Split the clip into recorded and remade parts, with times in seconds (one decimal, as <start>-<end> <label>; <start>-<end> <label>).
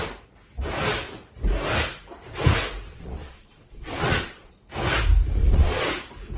0.0-2.9 recorded; 2.9-4.5 remade; 4.5-5.4 recorded; 5.4-5.9 remade; 5.9-6.4 recorded